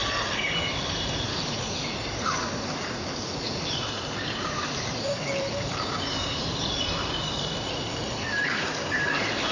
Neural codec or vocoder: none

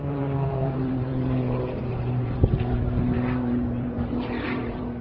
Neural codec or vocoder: vocoder, BigVGAN v2